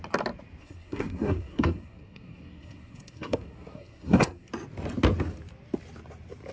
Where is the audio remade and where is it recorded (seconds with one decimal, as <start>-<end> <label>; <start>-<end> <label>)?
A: 0.0-0.6 recorded; 0.6-4.5 remade; 4.5-6.5 recorded